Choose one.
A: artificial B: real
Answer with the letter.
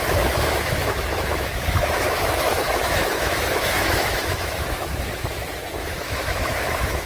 A